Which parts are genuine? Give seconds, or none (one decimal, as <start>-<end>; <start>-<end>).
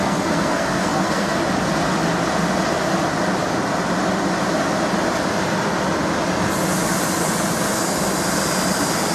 1.4-9.1